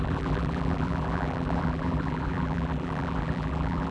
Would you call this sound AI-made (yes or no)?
yes